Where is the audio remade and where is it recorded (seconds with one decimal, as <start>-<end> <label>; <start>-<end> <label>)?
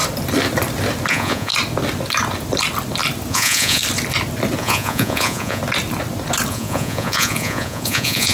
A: 0.0-1.1 recorded; 1.1-1.5 remade; 1.5-3.3 recorded; 3.3-3.8 remade; 3.8-4.6 recorded; 4.6-5.6 remade; 5.6-6.5 recorded; 6.5-8.3 remade